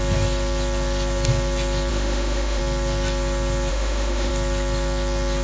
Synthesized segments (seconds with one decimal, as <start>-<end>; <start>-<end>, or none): 1.9-2.6; 3.7-4.3